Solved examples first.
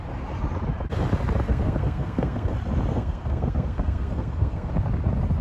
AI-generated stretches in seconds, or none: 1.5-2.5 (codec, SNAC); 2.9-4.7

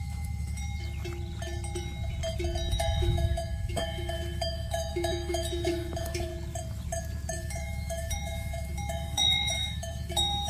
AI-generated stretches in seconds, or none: 0.0-0.6 (autoencoder, DAC-VAE); 2.7-6.3; 7.3-10.5

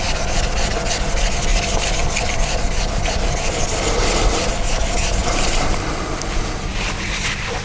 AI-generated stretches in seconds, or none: 2.0-4.4 (vocoder, BigVGAN v2); 5.2-6.0; 6.7-7.6

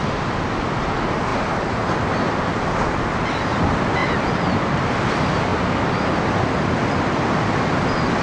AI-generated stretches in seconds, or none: 1.3-2.1 (vocoder, BigVGAN v2); 4.0-4.8

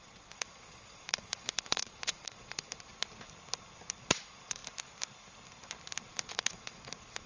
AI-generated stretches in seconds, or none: 0.0-2.9 (vocoder, Vocos); 4.0-4.6; 6.0-7.3

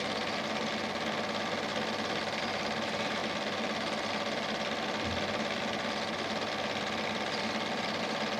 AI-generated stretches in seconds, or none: none